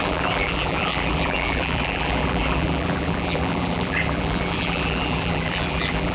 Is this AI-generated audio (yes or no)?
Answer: yes